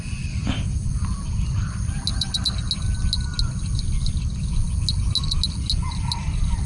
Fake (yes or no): no